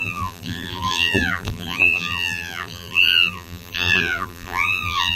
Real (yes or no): no